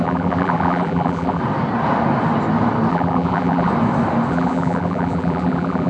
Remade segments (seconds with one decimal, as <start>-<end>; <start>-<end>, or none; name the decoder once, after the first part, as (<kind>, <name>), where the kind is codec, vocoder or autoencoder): 0.0-1.4 (vocoder, BigVGAN v2); 2.9-3.7; 4.3-5.9